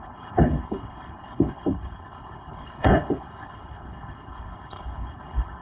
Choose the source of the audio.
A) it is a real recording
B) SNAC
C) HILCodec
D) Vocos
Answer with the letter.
C